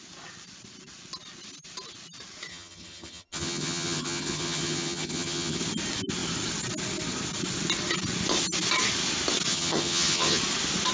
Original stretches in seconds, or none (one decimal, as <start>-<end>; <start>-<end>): 0.0-2.5; 5.6-9.5; 10.4-10.9